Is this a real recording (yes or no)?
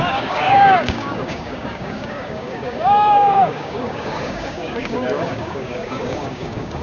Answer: no